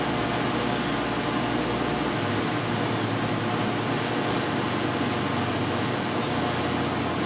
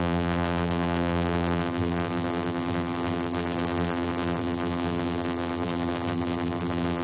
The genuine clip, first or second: first